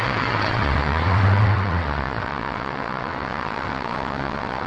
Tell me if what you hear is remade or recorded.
remade